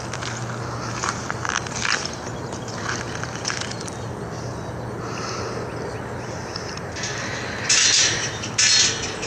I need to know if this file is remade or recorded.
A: recorded